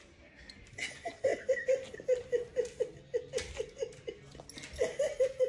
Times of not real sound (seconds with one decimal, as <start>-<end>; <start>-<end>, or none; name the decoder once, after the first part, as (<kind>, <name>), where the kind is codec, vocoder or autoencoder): none